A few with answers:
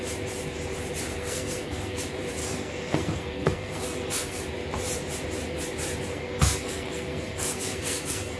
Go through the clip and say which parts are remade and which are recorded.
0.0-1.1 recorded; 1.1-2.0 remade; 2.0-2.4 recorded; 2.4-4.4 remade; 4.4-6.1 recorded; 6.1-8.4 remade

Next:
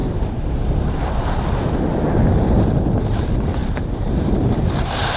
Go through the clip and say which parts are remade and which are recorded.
0.0-5.2 recorded

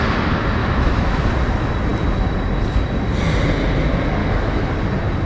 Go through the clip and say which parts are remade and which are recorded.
0.0-0.6 recorded; 0.6-1.3 remade; 1.3-4.2 recorded; 4.2-4.7 remade; 4.7-5.3 recorded

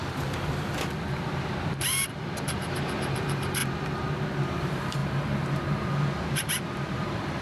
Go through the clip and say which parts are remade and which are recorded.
0.0-1.0 recorded; 1.0-3.6 remade; 3.6-4.6 recorded; 4.6-7.4 remade